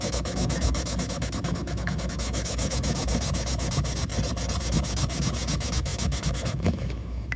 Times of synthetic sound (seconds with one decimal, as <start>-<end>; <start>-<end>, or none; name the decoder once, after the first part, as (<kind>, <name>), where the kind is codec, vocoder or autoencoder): 0.0-4.1 (autoencoder, DAC-VAE); 4.6-7.4